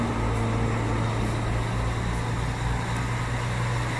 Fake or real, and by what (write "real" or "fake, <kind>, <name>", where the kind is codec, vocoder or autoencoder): real